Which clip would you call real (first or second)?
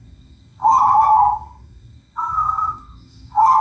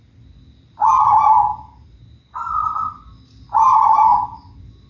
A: second